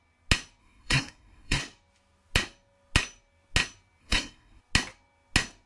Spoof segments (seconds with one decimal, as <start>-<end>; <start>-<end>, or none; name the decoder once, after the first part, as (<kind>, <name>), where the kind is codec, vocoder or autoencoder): 0.6-1.6 (codec, SNAC); 4.0-4.6